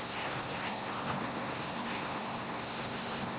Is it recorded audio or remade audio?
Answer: remade